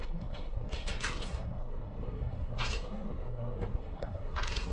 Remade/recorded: remade